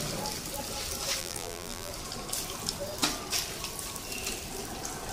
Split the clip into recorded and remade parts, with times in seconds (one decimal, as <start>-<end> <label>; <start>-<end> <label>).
0.0-1.2 recorded; 1.2-1.9 remade; 1.9-5.1 recorded